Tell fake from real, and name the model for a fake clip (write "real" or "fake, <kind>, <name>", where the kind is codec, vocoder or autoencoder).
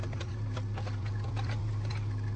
fake, vocoder, BigVGAN v2